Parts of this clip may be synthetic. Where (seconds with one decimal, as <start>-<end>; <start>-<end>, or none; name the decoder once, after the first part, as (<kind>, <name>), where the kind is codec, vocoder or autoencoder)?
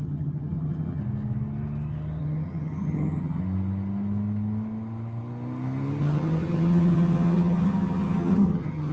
0.0-1.0 (vocoder, HiFi-GAN); 2.2-3.4; 6.0-8.9